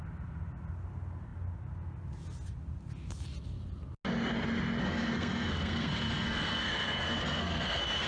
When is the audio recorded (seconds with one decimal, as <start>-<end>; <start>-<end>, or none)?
0.0-4.8